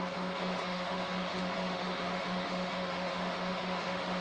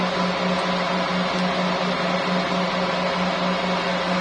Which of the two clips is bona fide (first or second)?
second